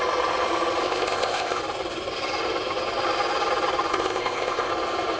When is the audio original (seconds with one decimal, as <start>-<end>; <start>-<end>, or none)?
0.0-0.8; 1.6-3.9; 4.7-5.2